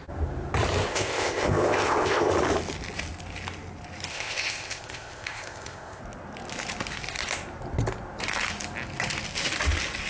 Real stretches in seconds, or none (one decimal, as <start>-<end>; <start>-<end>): 0.0-0.9; 2.3-4.1; 6.0-10.1